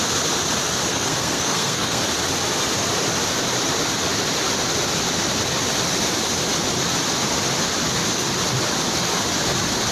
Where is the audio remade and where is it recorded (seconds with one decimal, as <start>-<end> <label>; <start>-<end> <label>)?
0.0-0.9 recorded; 0.9-2.0 remade; 2.0-9.9 recorded